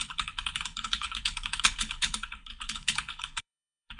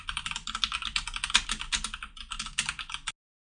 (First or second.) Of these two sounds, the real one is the second